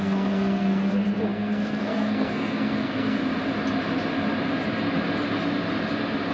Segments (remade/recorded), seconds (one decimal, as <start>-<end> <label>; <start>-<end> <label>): 0.0-3.2 remade; 3.2-6.3 recorded